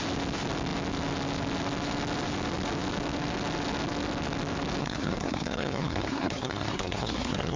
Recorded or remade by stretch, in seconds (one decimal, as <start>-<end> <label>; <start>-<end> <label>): 0.0-4.8 recorded; 4.8-7.6 remade